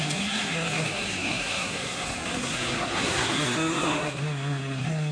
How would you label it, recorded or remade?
remade